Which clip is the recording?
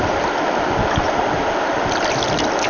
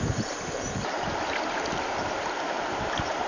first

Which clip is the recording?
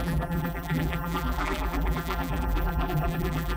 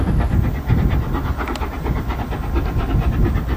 second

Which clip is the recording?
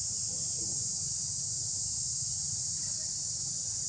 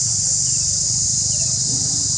second